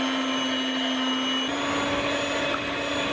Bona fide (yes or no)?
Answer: yes